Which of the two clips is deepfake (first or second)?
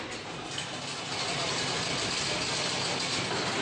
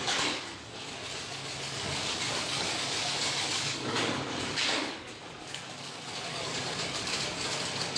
second